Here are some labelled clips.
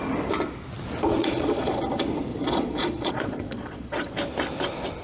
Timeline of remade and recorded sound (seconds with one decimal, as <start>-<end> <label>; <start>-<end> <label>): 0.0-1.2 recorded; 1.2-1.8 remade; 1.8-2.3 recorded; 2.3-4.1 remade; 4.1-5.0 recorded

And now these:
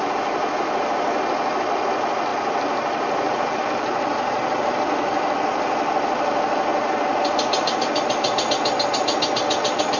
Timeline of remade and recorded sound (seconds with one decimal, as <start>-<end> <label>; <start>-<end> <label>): 0.0-10.0 recorded

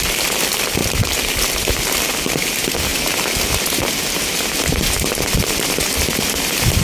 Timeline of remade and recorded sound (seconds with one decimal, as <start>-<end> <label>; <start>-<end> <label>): 0.0-6.8 recorded

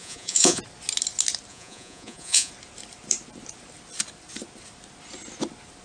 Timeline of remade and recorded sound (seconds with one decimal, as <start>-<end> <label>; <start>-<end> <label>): 0.0-0.6 remade; 0.6-1.5 recorded; 1.5-2.5 remade; 2.5-5.8 recorded